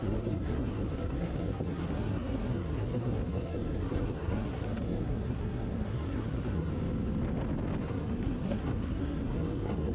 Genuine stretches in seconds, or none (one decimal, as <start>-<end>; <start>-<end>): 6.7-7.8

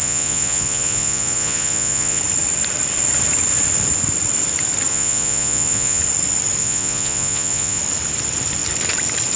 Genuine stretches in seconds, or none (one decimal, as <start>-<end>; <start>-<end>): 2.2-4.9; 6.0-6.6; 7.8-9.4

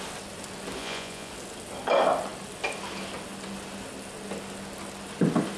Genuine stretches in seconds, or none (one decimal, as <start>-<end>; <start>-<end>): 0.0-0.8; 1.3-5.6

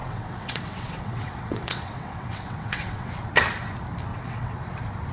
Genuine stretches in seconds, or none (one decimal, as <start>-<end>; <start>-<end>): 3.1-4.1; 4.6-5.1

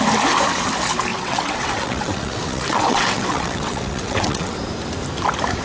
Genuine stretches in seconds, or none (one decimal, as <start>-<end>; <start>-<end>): 0.0-1.1; 4.5-5.6

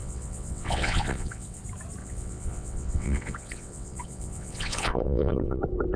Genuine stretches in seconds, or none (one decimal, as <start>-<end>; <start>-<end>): 1.6-2.0; 5.6-6.0